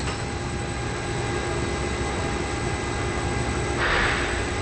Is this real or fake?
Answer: real